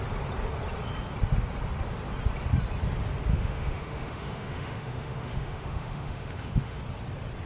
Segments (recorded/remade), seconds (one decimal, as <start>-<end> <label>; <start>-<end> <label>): 0.0-3.3 recorded; 3.3-6.8 remade; 6.8-7.5 recorded